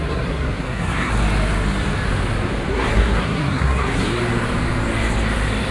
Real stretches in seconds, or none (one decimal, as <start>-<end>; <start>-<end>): 1.1-2.7; 4.2-5.7